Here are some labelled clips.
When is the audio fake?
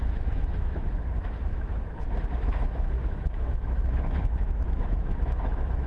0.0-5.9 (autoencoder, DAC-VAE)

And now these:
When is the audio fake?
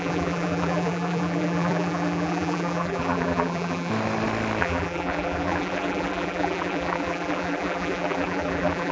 0.0-3.9 (vocoder, BigVGAN v2); 4.6-8.9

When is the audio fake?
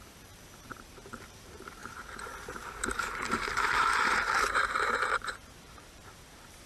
0.0-6.7 (vocoder, BigVGAN v2)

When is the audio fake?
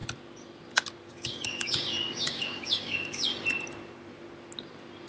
1.1-3.3 (codec, DAC)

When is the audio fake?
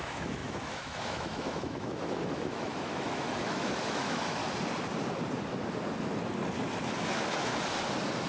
0.0-4.4 (autoencoder, DAC-VAE); 7.1-7.5